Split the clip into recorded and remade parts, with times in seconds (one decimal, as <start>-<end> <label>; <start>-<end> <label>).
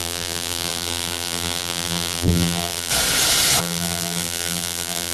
0.0-2.9 remade; 2.9-3.6 recorded; 3.6-5.1 remade